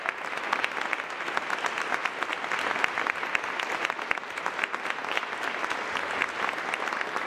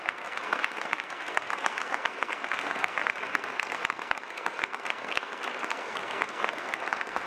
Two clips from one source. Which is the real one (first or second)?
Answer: first